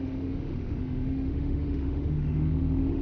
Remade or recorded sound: remade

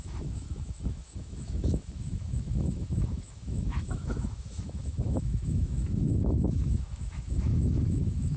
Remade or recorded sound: remade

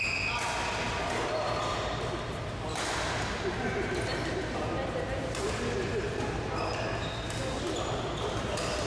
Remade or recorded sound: recorded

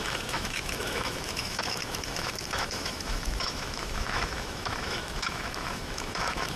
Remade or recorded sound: remade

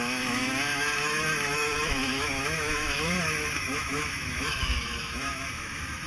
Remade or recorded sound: remade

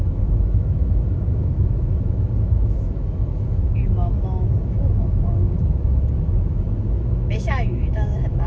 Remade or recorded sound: remade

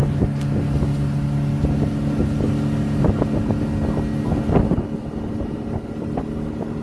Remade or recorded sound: recorded